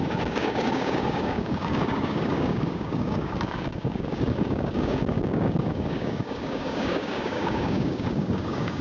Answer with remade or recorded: remade